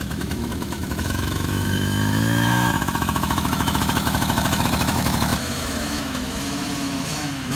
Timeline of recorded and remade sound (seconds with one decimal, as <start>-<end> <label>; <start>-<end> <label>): 0.0-7.5 remade